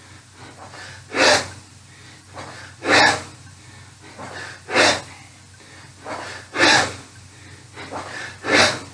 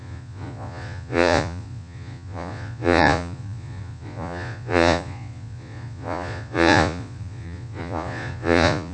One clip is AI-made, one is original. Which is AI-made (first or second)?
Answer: second